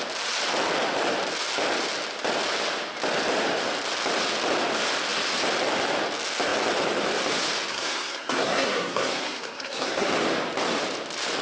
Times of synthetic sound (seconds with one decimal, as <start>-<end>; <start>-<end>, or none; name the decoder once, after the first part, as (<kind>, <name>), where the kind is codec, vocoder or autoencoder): 7.7-10.1 (codec, SNAC)